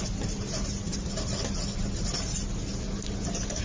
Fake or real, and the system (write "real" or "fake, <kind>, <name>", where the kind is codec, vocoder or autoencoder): real